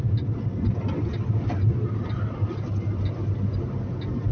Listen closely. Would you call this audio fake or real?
real